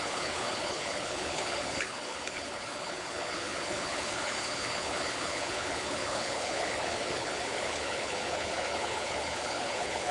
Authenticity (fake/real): fake